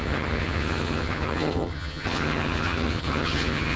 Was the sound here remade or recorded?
remade